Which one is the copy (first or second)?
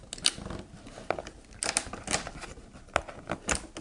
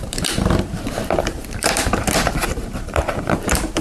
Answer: second